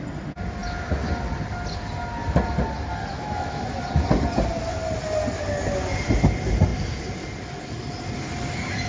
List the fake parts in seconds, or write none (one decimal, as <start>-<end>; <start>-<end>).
3.1-3.6